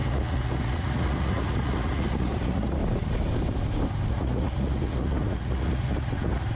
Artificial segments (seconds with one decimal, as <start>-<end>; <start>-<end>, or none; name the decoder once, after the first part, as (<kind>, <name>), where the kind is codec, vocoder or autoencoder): 0.0-2.8 (vocoder, Vocos); 4.1-6.6